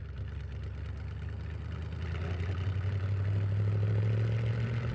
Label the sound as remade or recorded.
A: recorded